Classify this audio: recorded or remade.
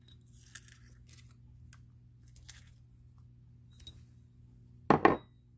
recorded